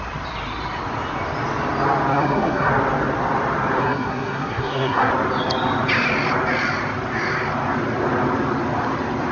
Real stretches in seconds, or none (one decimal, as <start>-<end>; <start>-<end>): 0.0-2.1; 2.7-3.8; 5.1-9.3